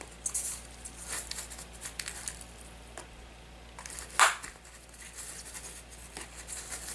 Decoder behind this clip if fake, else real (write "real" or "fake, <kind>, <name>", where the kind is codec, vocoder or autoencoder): real